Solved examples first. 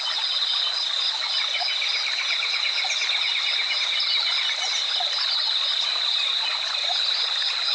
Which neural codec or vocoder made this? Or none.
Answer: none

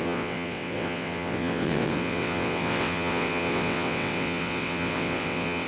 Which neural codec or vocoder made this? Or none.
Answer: vocoder, WaveNeXt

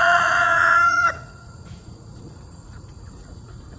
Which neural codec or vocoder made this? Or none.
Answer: vocoder, Vocos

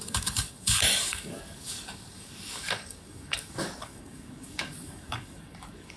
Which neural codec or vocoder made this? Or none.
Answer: codec, DAC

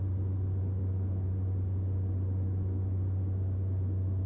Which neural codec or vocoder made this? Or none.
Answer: none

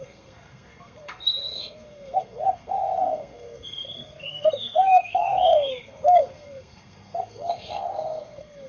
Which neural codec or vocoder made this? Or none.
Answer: codec, SNAC